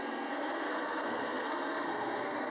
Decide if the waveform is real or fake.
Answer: fake